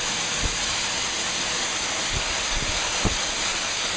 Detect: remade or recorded recorded